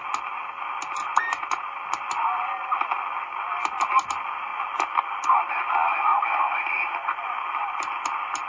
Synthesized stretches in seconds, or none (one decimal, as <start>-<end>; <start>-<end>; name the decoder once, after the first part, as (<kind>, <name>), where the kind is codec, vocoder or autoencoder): none